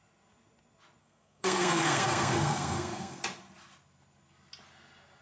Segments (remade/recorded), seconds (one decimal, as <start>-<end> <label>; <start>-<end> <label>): 0.0-1.0 recorded; 1.0-3.2 remade; 3.2-5.2 recorded